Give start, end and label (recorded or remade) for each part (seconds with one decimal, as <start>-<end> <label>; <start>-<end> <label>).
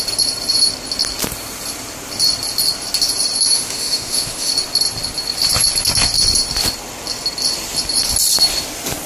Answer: 0.0-3.5 recorded; 3.5-4.5 remade; 4.5-9.1 recorded